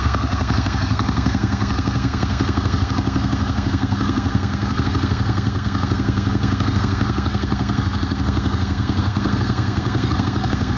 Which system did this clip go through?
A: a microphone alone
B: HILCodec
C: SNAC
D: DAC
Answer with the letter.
C